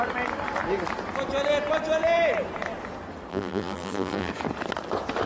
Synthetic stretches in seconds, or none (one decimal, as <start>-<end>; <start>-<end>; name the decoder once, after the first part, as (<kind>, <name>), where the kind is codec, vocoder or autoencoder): 3.3-4.3 (vocoder, BigVGAN v2)